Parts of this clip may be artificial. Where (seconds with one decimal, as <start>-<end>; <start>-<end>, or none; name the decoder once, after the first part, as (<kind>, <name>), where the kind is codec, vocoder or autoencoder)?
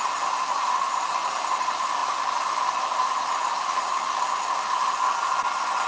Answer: none